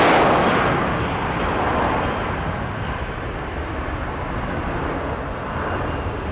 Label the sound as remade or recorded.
recorded